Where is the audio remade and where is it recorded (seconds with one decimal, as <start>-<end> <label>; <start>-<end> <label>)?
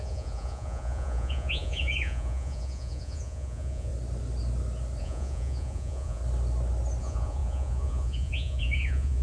0.0-3.9 remade; 3.9-5.0 recorded; 5.0-6.2 remade; 6.2-7.0 recorded; 7.0-9.2 remade